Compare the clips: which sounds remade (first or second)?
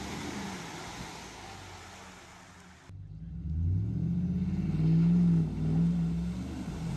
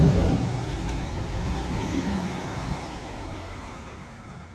second